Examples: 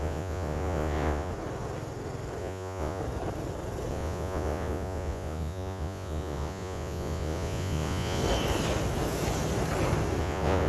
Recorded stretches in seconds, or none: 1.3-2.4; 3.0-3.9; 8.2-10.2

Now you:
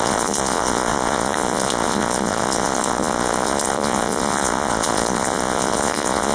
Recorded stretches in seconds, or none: none

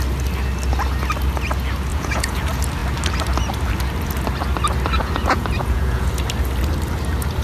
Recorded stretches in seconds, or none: 0.0-1.9; 2.4-5.0; 6.1-7.4

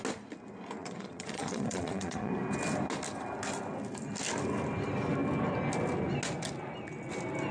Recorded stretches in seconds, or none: 0.0-0.8; 2.3-7.5

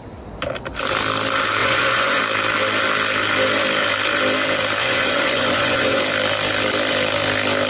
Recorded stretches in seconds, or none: 0.0-1.6; 2.2-4.8; 6.0-7.7

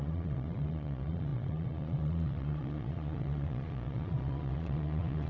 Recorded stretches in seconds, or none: none

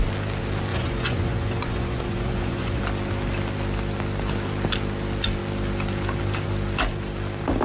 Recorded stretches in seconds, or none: 0.0-0.7; 2.8-7.6